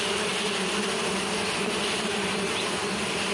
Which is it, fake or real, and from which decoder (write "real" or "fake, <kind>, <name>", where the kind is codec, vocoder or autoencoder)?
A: real